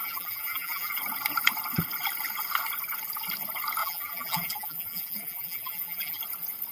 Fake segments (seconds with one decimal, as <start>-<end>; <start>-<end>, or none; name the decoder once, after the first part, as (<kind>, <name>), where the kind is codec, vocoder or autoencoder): 0.0-0.9 (vocoder, BigVGAN v2); 3.8-6.2